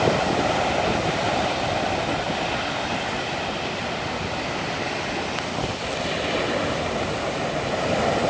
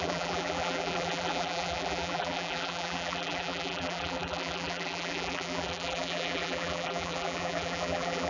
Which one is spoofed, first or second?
second